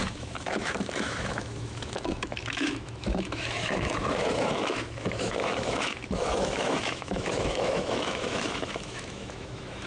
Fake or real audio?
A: fake